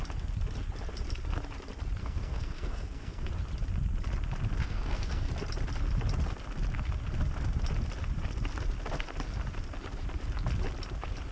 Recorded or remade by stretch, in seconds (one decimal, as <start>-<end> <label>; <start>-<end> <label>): 0.0-2.0 recorded; 2.0-3.3 remade; 3.3-4.6 recorded; 4.6-5.3 remade; 5.3-11.3 recorded